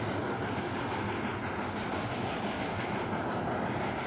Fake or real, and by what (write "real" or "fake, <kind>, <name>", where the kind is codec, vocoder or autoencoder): real